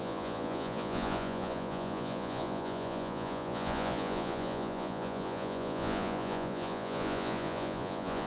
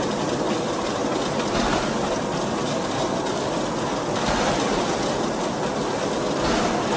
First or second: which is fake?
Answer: first